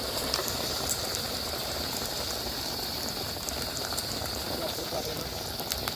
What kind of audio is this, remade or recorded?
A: remade